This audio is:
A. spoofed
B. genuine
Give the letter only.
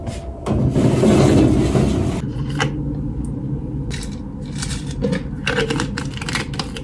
B